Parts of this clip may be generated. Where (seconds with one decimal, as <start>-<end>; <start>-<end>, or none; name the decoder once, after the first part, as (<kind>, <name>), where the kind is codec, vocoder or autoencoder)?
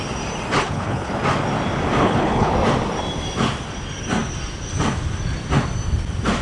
0.6-1.1 (codec, HILCodec); 2.0-2.5